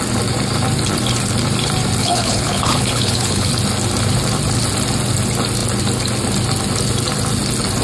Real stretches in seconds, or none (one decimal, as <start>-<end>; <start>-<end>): 0.0-2.0; 3.5-7.8